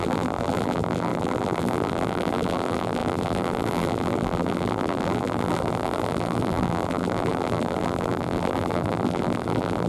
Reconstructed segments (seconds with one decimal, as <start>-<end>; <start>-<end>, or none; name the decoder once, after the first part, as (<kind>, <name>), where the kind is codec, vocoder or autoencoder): 0.0-9.9 (vocoder, BigVGAN v2)